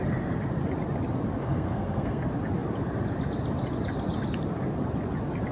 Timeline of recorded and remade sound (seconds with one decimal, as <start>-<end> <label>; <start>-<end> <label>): 0.0-1.4 recorded; 1.4-2.2 remade; 2.2-5.5 recorded